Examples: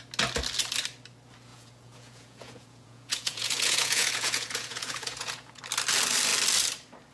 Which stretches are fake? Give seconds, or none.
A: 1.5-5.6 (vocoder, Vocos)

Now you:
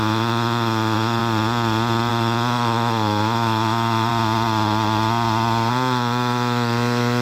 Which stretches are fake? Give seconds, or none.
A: 0.0-1.2 (autoencoder, DAC-VAE); 2.1-4.1; 5.7-7.2